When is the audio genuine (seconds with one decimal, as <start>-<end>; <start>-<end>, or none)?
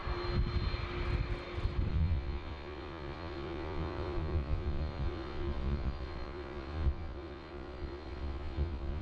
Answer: 0.0-1.9